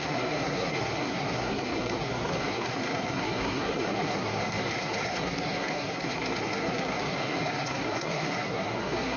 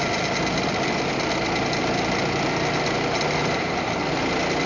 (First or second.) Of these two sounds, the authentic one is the second